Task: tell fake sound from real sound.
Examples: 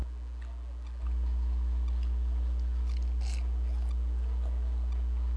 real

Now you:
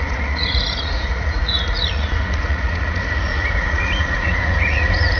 fake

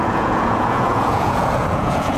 fake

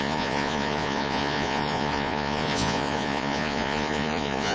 fake